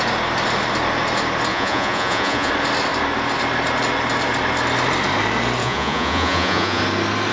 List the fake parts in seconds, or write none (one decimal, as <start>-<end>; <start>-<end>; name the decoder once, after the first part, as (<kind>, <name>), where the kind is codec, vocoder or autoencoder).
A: 1.5-2.5 (vocoder, Vocos); 5.6-6.8